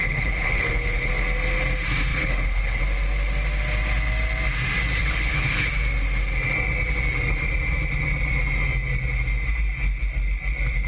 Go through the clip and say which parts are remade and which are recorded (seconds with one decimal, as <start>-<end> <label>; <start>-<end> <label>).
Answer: 0.0-1.1 remade; 1.1-2.1 recorded; 2.1-2.8 remade; 2.8-5.0 recorded; 5.0-5.7 remade; 5.7-10.9 recorded